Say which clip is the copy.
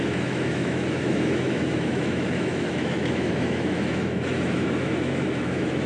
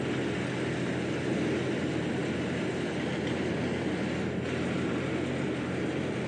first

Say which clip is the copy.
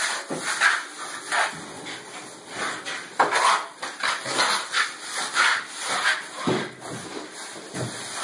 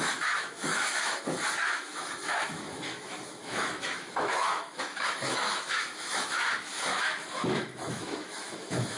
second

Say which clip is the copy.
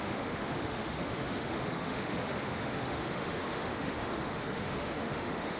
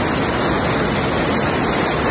first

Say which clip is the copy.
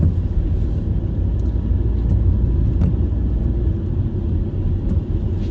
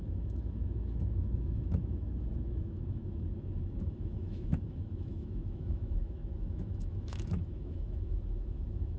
second